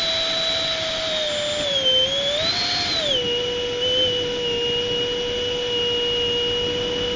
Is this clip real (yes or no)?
yes